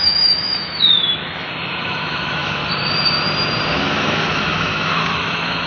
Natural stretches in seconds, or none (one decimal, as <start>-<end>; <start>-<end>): 2.6-3.7